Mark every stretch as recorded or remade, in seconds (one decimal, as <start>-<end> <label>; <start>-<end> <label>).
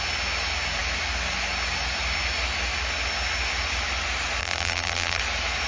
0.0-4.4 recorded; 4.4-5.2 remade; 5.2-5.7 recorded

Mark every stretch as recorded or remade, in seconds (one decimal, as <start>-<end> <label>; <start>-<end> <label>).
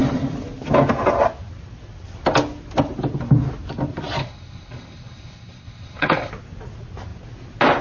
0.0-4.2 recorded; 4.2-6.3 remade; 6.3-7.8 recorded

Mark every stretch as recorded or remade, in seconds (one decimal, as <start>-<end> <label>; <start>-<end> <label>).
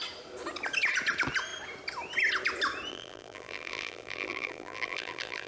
0.0-2.9 recorded; 2.9-5.5 remade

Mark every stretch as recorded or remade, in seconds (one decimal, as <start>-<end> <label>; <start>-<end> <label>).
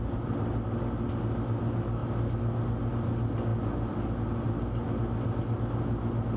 0.0-6.4 recorded